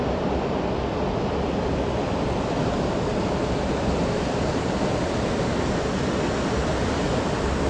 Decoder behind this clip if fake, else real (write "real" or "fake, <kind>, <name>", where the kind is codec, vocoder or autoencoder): real